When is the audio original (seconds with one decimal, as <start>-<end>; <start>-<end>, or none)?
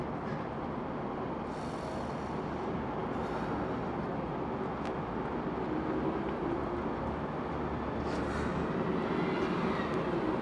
0.0-10.4